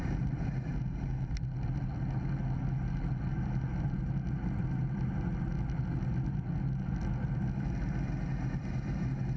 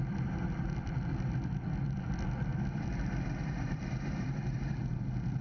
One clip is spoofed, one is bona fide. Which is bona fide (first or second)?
first